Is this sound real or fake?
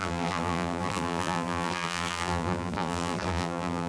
fake